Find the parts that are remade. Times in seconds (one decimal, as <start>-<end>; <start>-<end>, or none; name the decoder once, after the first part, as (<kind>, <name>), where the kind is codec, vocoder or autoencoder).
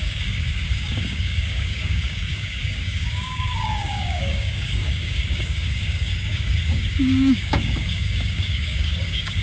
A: 0.0-9.4 (codec, DAC)